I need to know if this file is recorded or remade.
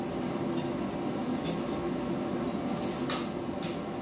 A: recorded